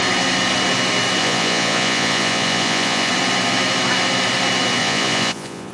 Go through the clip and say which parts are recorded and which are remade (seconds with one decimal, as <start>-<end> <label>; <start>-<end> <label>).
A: 0.0-1.2 recorded; 1.2-3.1 remade; 3.1-4.8 recorded; 4.8-5.7 remade